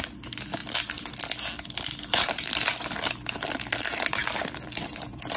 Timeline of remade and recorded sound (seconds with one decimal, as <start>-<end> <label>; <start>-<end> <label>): 0.0-4.2 recorded; 4.2-5.4 remade